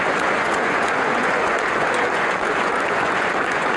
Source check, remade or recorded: remade